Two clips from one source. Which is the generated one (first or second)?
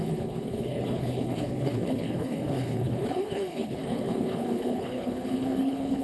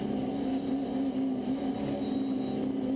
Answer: first